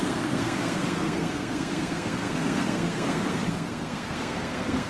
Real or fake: fake